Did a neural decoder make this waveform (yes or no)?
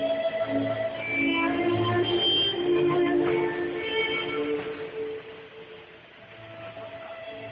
no